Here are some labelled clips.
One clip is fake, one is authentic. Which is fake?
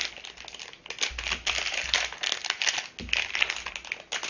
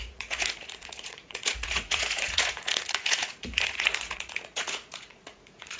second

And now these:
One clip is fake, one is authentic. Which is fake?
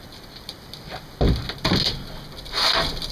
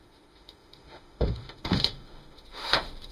second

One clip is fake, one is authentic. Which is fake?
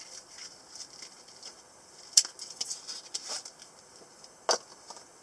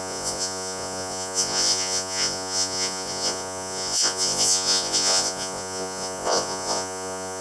second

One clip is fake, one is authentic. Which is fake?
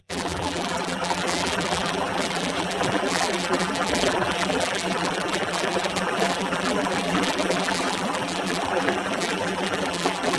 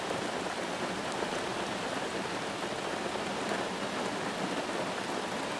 first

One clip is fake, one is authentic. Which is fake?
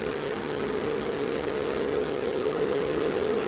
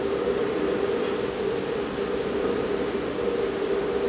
first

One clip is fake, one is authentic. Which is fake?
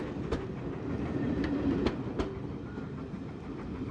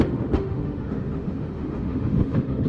second